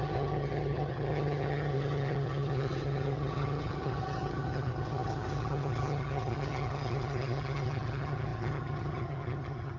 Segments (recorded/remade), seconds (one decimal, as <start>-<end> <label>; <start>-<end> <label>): 0.0-9.8 remade